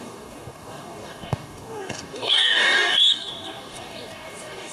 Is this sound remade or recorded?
remade